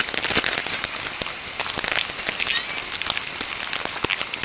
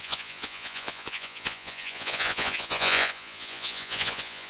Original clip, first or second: first